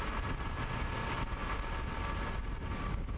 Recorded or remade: recorded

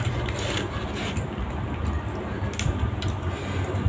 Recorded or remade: recorded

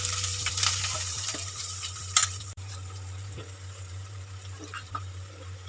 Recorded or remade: remade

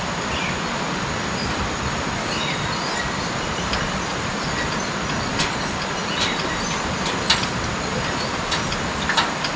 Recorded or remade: recorded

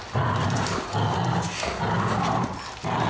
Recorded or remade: recorded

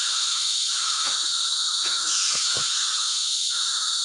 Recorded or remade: remade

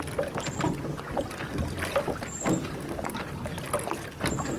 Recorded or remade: recorded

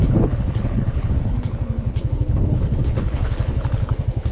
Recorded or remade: remade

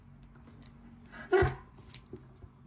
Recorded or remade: recorded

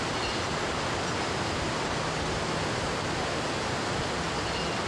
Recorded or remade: recorded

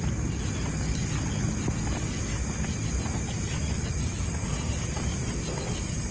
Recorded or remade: recorded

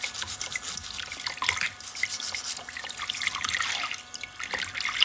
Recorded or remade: recorded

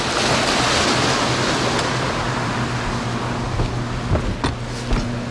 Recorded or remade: recorded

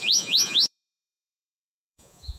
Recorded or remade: remade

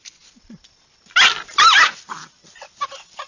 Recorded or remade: recorded